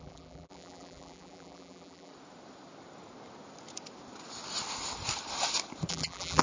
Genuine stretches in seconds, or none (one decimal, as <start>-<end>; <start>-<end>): 2.1-5.9